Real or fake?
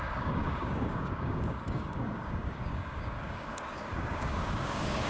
fake